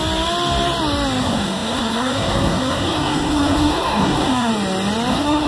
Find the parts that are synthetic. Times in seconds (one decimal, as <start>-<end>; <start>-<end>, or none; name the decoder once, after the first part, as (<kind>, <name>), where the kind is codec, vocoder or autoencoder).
1.2-4.5 (codec, SNAC); 5.1-5.5

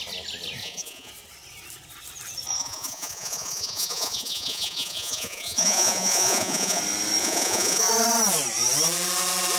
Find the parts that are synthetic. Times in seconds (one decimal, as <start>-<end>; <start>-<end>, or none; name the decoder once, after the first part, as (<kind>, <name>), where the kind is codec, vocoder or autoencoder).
0.6-1.1 (vocoder, Vocos); 2.6-6.8; 7.2-7.9

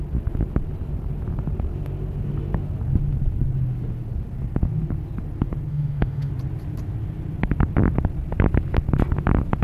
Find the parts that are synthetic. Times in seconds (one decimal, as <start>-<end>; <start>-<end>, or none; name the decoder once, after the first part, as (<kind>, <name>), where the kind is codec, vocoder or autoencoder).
5.7-6.3 (autoencoder, DAC-VAE)

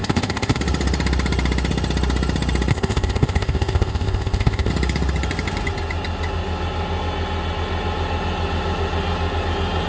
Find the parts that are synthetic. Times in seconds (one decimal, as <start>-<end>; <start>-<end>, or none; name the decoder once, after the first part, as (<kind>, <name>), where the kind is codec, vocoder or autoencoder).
0.0-0.6 (codec, ZipCodec); 2.7-4.7

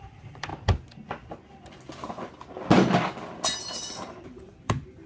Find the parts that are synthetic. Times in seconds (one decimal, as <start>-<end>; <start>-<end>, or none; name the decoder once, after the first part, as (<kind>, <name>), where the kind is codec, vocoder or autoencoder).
0.0-0.5 (vocoder, BigVGAN v2); 3.6-5.1

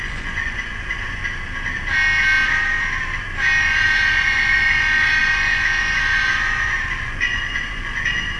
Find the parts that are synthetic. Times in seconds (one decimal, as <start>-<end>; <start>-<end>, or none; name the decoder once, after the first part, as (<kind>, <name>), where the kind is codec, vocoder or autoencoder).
0.0-1.2 (vocoder, Vocos); 3.6-8.4

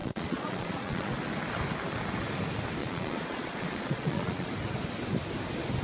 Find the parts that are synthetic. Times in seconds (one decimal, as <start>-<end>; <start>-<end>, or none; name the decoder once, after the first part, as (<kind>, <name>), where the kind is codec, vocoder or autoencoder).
0.0-1.1 (vocoder, Vocos); 2.8-4.5

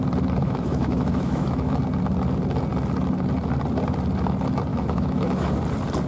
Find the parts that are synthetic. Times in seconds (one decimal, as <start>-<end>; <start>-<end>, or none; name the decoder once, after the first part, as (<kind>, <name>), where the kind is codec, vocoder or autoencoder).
0.4-1.8 (autoencoder, DAC-VAE); 4.7-5.6